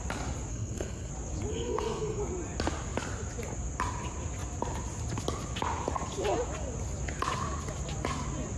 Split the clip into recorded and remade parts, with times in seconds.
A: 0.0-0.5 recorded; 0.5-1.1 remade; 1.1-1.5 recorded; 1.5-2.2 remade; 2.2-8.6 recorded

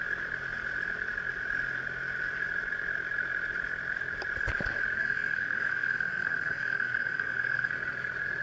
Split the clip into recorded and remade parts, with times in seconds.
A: 0.0-5.0 recorded; 5.0-7.7 remade; 7.7-8.4 recorded

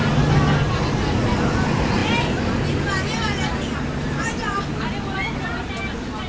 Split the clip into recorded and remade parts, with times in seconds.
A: 0.0-6.3 recorded